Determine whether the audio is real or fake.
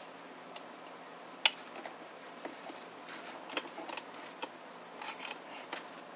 real